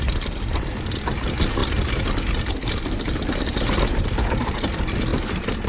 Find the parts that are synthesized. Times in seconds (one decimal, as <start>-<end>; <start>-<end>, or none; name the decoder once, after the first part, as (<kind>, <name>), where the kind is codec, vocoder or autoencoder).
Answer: none

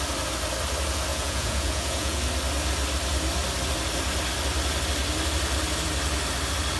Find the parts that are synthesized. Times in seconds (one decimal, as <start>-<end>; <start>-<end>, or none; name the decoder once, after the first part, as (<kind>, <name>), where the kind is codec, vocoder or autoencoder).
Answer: 1.1-2.2 (vocoder, Vocos)

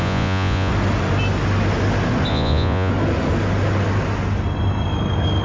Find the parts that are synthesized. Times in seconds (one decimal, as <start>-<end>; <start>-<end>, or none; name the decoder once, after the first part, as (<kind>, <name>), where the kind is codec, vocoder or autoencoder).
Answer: 0.0-0.7 (vocoder, Vocos); 2.3-2.9

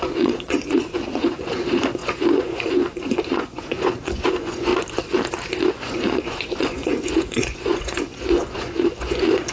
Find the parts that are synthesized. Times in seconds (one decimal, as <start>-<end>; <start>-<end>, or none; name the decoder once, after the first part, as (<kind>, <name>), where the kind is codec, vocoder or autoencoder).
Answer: 0.0-4.7 (vocoder, Vocos); 5.7-9.5

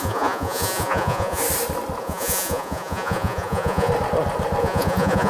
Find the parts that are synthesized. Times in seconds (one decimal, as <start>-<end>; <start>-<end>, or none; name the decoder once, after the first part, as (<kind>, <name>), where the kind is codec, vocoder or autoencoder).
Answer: 0.0-1.4 (vocoder, Vocos); 2.0-3.9; 4.6-5.3

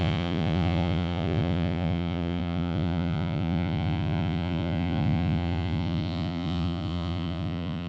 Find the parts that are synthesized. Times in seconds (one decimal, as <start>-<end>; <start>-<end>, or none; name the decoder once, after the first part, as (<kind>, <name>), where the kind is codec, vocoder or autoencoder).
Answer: 0.0-7.9 (vocoder, Vocos)